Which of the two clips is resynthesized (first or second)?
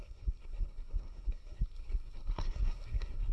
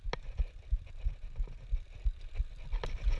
first